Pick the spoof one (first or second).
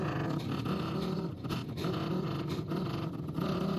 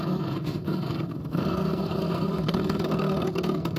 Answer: second